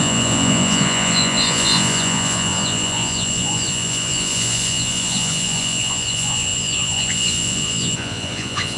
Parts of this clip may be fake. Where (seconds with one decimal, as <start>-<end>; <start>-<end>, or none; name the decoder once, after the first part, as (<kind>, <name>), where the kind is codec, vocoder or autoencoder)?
0.0-8.8 (vocoder, Vocos)